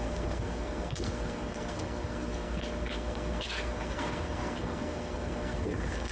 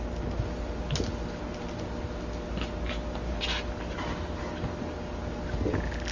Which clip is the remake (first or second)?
first